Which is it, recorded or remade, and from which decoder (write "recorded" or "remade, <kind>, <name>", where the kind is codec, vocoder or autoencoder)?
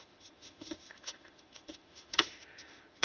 remade, autoencoder, DAC-VAE